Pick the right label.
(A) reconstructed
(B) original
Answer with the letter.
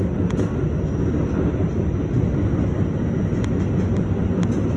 B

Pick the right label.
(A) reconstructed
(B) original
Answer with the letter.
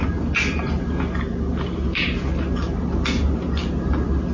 B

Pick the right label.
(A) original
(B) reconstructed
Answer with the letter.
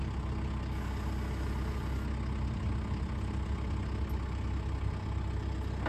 A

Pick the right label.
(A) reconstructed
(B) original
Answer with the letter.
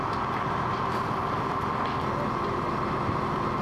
B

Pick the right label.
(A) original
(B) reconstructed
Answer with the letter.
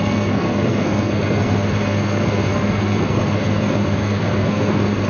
B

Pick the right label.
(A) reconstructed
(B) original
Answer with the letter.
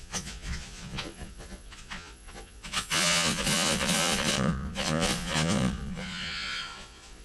A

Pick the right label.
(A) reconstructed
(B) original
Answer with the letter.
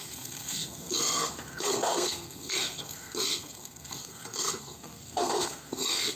A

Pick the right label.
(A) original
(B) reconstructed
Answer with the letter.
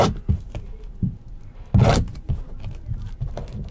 A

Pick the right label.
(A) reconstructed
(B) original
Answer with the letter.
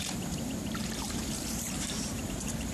A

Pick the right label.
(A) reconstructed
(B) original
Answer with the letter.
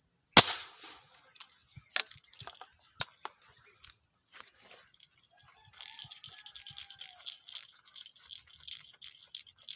B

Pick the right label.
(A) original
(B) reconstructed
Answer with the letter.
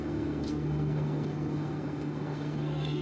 B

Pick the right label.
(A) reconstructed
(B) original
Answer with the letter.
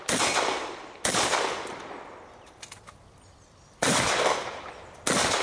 B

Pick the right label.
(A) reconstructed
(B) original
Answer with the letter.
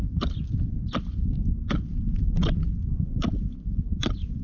B